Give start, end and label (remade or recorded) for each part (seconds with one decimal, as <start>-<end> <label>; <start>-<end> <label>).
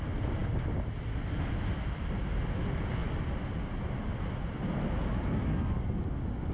0.0-6.5 recorded